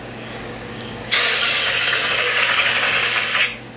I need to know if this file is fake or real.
fake